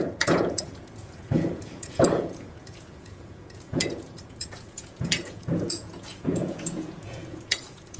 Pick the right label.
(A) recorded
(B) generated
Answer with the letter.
B